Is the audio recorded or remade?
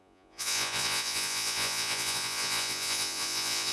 remade